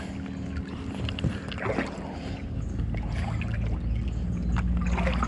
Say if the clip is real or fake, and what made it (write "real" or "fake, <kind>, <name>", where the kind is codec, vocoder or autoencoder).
real